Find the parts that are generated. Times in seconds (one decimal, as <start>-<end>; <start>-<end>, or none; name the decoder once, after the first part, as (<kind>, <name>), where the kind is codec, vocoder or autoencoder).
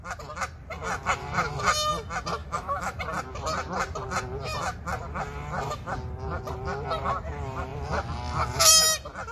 2.4-3.0 (autoencoder, DAC-VAE)